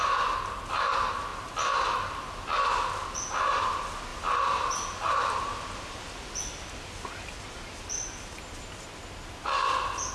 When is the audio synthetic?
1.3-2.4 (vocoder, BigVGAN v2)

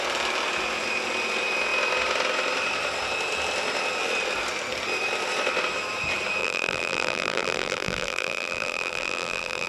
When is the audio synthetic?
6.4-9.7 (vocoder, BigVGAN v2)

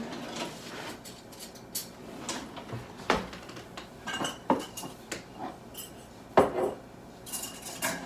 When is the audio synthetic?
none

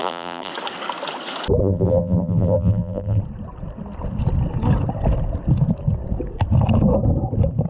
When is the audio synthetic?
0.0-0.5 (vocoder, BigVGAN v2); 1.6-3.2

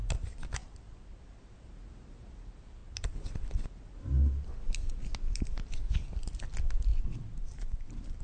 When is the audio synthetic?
0.6-1.2 (vocoder, BigVGAN v2); 2.8-4.0; 6.9-8.2

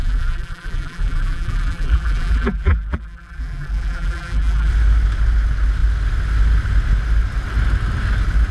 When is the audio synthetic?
0.0-4.7 (vocoder, BigVGAN v2)